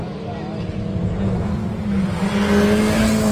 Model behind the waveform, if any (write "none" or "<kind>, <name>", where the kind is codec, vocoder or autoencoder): none